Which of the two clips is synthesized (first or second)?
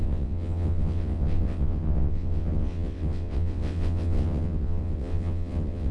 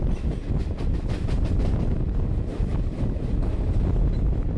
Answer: first